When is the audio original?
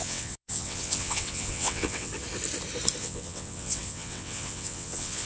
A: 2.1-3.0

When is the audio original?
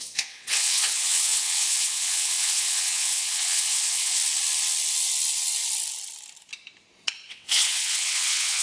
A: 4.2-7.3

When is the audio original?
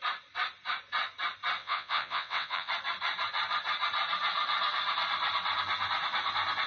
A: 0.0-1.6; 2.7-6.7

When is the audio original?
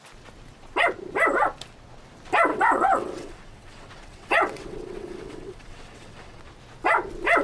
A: 0.0-2.5; 6.4-7.4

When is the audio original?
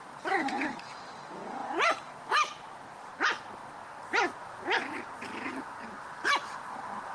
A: 0.0-7.1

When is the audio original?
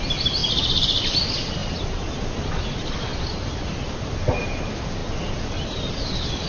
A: 0.0-6.5